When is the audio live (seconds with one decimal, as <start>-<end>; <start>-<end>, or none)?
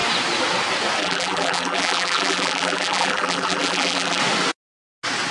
0.0-1.0; 4.2-5.3